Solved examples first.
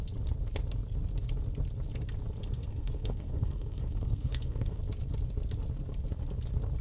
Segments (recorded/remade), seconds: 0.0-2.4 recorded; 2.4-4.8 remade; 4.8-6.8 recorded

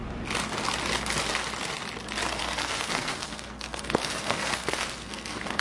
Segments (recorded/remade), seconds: 0.0-2.4 recorded; 2.4-5.6 remade

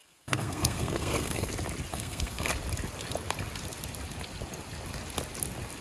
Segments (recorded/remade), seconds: 0.0-1.5 remade; 1.5-1.9 recorded; 1.9-2.5 remade; 2.5-5.8 recorded

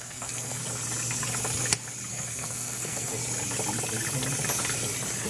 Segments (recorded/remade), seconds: 0.0-0.6 remade; 0.6-2.1 recorded; 2.1-3.2 remade; 3.2-5.3 recorded

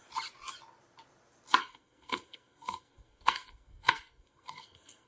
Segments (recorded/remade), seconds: 0.0-1.6 recorded; 1.6-5.1 remade

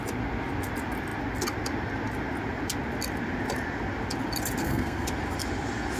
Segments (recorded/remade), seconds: 0.0-4.6 recorded; 4.6-5.1 remade; 5.1-6.0 recorded